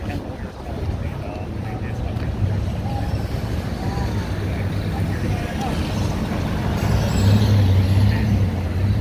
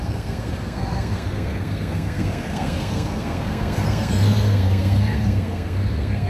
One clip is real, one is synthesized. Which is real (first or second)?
first